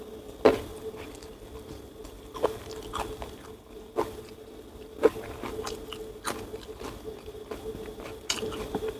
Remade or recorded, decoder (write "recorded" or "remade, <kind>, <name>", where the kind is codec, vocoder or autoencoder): recorded